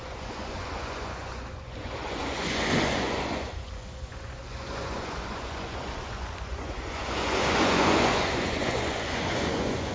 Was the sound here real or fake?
fake